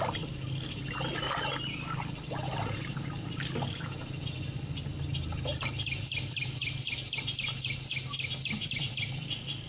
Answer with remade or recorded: recorded